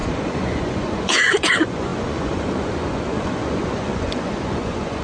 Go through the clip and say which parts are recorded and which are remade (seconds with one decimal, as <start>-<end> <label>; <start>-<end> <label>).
0.0-5.0 remade